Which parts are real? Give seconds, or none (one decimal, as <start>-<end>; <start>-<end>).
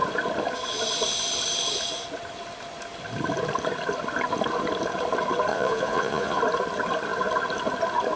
0.0-5.5; 6.4-8.2